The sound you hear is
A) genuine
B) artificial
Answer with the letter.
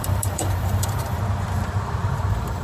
B